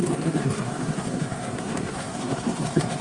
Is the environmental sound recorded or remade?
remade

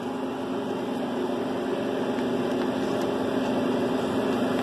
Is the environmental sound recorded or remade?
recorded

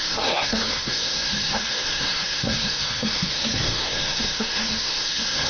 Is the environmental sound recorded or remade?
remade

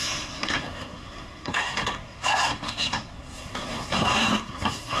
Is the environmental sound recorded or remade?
remade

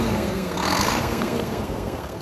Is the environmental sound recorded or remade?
remade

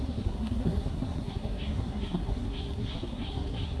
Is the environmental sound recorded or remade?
remade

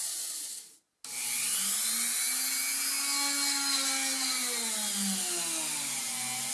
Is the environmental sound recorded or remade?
recorded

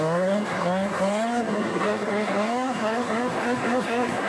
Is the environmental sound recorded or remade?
remade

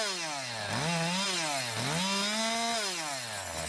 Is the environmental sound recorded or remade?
recorded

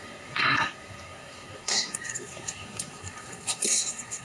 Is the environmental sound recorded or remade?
remade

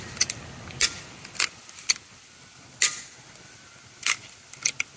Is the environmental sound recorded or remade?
recorded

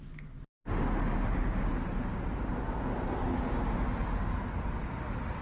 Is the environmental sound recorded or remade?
recorded